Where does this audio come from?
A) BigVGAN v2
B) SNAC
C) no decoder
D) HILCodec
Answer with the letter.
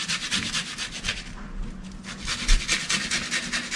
C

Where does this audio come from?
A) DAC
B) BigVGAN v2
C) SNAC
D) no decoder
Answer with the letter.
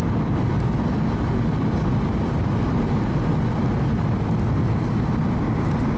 D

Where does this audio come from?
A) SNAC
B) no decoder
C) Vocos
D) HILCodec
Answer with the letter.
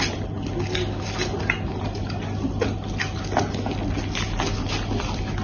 B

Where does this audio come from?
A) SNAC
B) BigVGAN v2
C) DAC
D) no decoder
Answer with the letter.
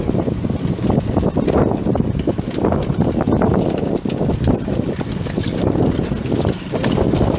D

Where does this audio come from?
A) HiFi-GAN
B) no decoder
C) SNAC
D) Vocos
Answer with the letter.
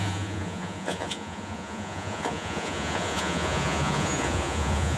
D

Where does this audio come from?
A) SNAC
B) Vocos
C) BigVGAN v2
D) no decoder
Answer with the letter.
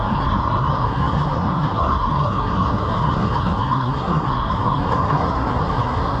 A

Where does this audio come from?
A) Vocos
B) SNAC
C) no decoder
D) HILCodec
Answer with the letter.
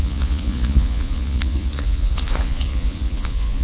A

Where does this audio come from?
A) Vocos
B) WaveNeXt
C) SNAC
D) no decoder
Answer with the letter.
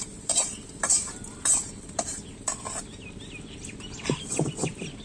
D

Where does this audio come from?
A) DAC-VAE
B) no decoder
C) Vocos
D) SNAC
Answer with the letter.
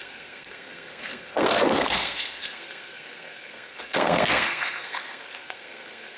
D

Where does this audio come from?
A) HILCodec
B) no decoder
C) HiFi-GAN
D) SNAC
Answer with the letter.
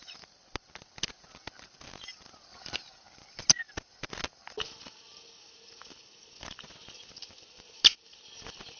B